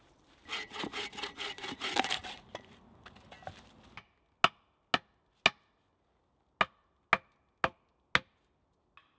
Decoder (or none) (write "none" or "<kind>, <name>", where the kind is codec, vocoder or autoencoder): none